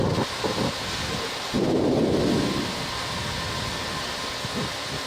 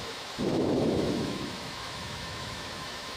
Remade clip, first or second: second